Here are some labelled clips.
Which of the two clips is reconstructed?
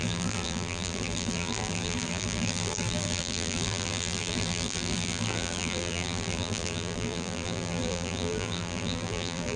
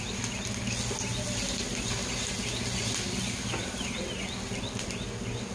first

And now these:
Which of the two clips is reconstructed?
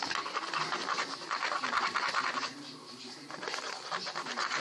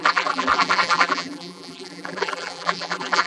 second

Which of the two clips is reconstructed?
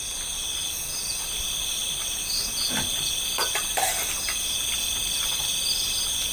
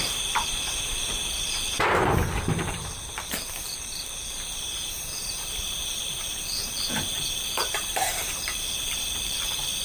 second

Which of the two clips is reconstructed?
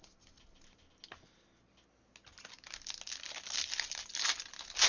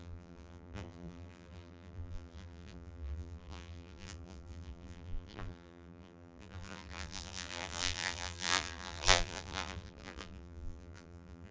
second